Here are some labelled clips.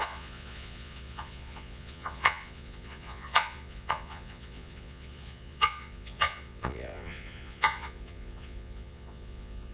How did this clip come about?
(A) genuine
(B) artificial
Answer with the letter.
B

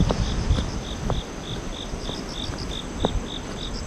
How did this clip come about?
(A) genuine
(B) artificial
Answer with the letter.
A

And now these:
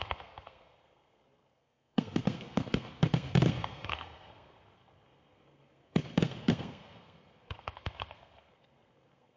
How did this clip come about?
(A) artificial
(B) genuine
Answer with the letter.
A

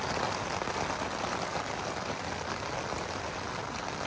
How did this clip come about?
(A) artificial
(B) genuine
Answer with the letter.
B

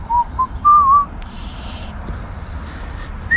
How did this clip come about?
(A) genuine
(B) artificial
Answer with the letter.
A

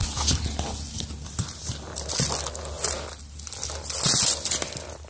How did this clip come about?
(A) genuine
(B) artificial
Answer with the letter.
A